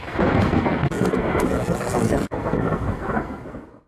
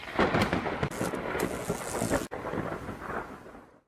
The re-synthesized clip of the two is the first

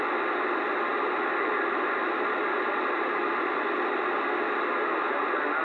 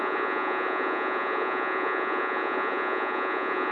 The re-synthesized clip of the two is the second